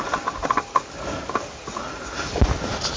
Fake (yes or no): no